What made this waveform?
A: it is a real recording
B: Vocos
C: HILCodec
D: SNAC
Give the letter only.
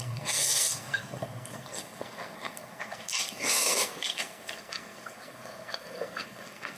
D